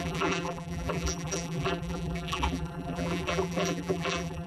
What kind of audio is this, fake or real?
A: fake